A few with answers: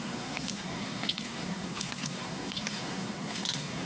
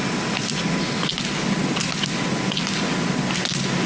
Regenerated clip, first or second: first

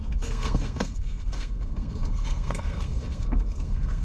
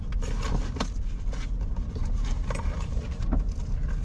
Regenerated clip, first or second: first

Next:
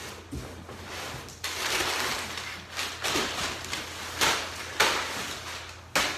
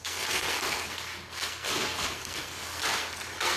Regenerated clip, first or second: second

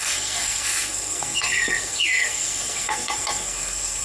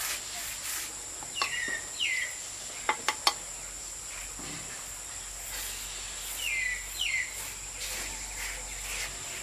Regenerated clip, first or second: first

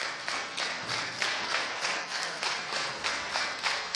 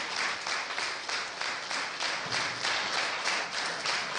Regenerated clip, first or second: first